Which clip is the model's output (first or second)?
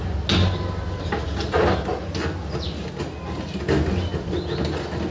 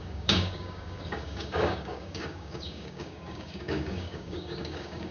second